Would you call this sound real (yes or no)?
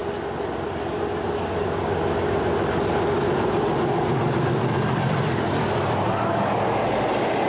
yes